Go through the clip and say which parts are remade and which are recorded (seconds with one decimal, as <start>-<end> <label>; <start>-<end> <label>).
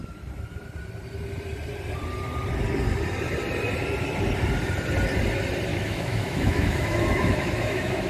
0.0-5.7 recorded; 5.7-8.1 remade